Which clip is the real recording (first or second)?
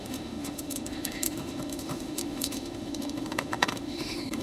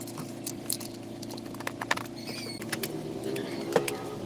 second